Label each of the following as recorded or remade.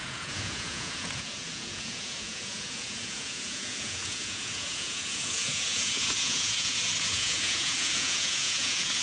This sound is remade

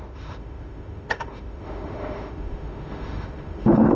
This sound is remade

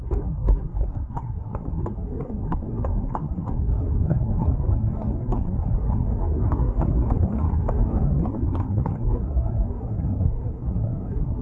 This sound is remade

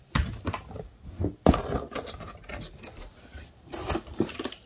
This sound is recorded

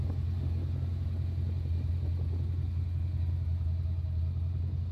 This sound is recorded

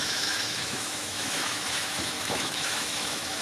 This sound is remade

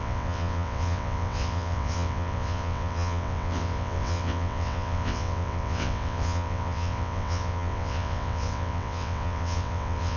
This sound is remade